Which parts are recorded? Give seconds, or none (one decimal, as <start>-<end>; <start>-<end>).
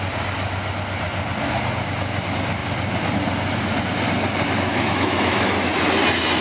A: 0.0-4.7; 5.5-6.4